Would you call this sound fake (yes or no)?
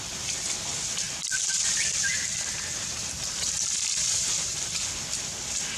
no